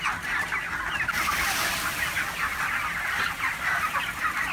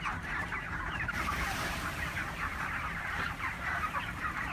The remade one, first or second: second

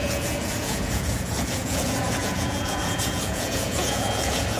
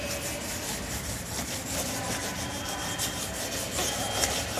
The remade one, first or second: first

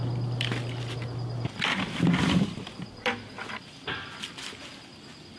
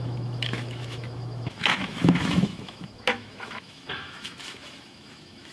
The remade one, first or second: second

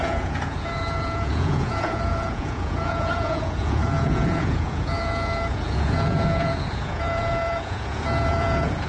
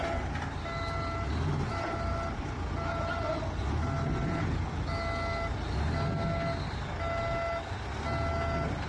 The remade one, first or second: first